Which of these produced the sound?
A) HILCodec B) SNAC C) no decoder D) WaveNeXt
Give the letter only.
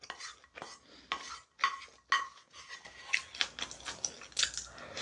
C